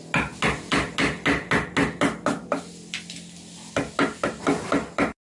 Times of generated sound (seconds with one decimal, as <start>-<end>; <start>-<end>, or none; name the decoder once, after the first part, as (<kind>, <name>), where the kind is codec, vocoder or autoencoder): none